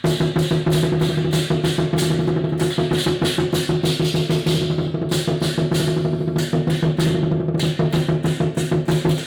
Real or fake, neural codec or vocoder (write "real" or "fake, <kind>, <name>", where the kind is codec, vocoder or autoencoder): real